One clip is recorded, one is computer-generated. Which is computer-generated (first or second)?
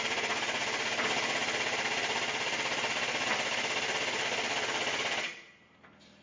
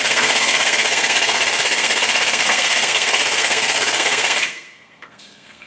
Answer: second